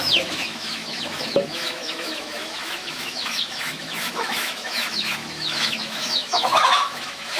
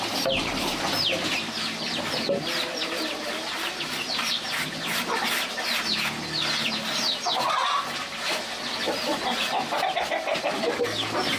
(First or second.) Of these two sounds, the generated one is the first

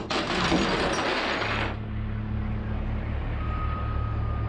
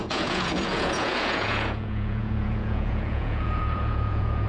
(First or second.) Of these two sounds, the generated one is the second